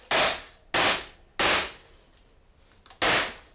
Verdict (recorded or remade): recorded